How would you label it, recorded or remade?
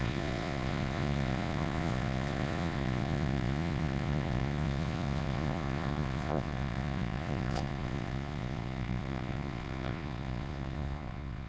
remade